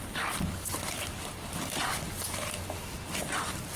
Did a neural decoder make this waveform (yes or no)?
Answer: no